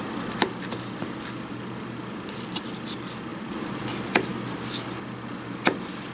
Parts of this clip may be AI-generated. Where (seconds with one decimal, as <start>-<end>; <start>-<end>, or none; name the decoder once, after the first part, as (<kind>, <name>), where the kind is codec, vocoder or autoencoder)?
3.3-3.8 (vocoder, BigVGAN v2)